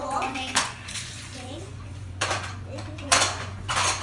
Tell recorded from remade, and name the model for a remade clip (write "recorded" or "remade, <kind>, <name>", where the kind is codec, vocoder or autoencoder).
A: remade, vocoder, Vocos